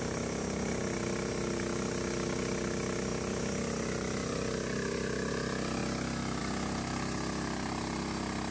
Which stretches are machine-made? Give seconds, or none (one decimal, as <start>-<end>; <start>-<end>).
none